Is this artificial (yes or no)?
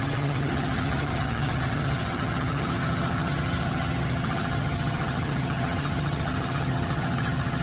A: yes